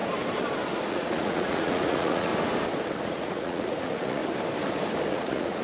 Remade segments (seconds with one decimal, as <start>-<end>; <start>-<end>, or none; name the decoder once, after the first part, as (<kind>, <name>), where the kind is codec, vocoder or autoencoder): 0.9-2.3 (vocoder, Vocos); 3.0-4.2; 5.1-5.6